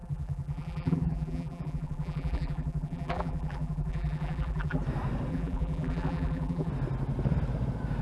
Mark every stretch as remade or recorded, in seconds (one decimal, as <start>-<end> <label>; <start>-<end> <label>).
0.0-4.8 remade; 4.8-5.3 recorded; 5.3-6.7 remade; 6.7-8.0 recorded